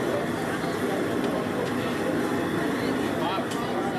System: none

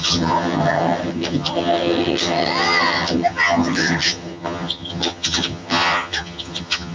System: vocoder, HiFi-GAN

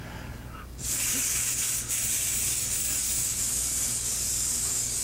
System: codec, DAC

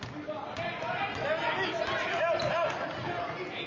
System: none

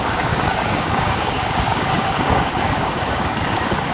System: codec, DAC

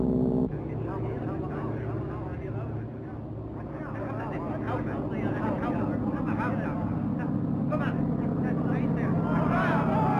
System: none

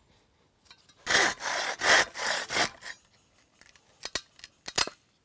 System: none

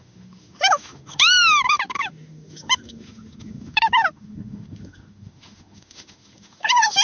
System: autoencoder, DAC-VAE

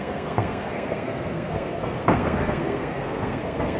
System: codec, SNAC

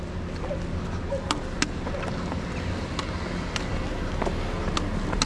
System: none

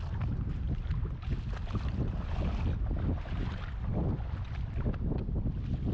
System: none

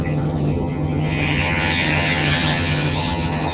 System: vocoder, HiFi-GAN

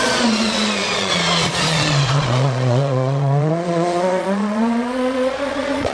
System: vocoder, Vocos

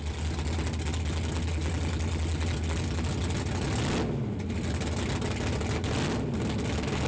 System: none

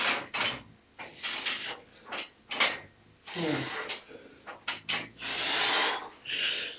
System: none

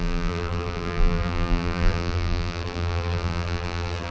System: vocoder, BigVGAN v2